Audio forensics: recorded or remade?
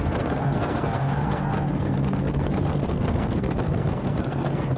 remade